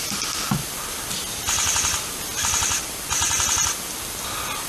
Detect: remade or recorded recorded